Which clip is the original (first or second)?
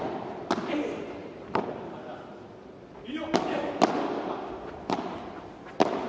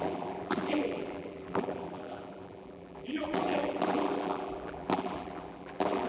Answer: first